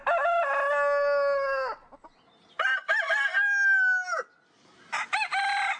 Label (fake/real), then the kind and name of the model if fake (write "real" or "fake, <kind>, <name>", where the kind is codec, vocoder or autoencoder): real